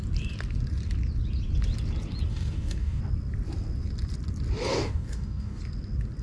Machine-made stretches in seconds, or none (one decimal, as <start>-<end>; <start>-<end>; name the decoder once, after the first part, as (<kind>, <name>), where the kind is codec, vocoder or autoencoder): 2.3-3.0 (codec, DAC); 4.7-5.6